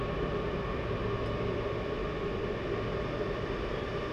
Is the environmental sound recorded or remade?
recorded